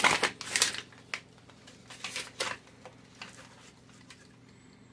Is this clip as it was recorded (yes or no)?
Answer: yes